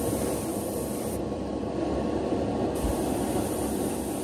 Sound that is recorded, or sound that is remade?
remade